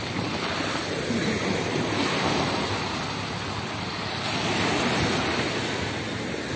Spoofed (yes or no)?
no